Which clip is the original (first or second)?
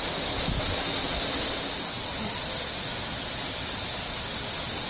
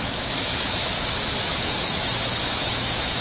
first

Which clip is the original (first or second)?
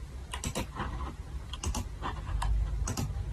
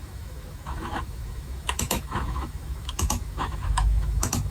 first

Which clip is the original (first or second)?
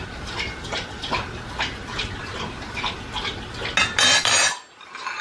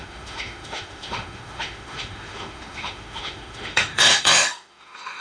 first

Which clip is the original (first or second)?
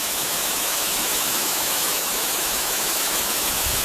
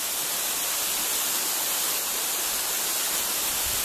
second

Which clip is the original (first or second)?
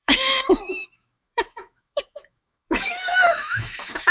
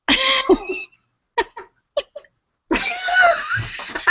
second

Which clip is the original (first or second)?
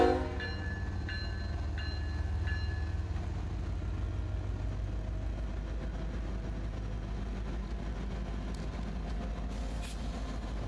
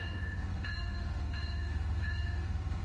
first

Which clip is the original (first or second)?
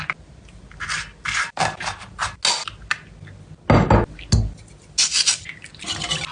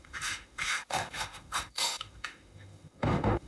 first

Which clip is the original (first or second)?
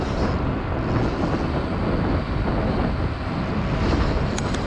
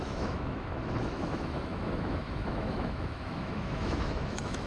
first